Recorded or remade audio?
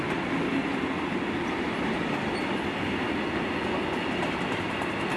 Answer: recorded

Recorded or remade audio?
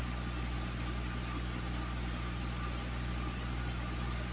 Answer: recorded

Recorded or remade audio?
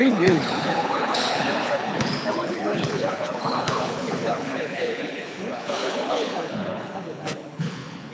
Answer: remade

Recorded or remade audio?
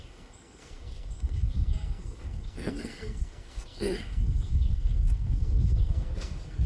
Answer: remade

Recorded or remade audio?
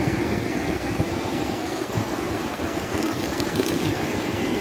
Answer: remade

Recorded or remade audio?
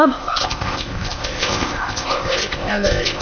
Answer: remade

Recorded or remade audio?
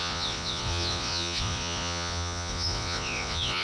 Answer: remade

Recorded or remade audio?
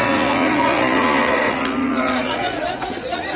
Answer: remade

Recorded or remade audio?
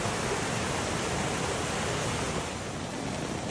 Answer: recorded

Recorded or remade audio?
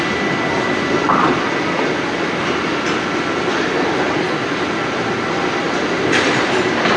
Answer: recorded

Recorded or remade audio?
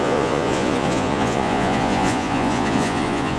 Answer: remade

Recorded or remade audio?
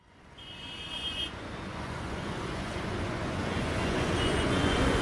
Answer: remade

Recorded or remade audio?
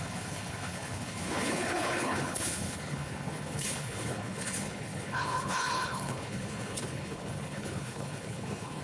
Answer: remade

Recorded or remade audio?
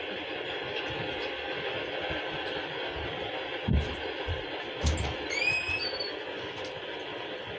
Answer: recorded